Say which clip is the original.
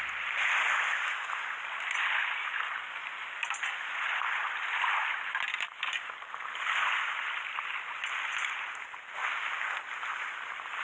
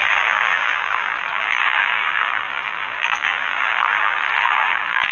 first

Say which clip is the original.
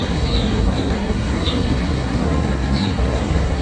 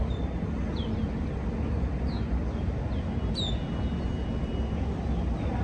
second